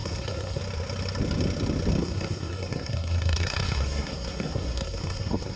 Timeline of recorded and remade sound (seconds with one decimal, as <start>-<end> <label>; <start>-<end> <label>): 0.0-0.6 remade; 0.6-2.0 recorded; 2.0-5.6 remade